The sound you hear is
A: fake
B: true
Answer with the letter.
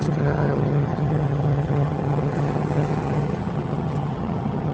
A